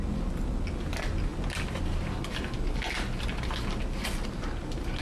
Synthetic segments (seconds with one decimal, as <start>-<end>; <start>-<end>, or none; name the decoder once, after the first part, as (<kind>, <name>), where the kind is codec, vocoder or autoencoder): none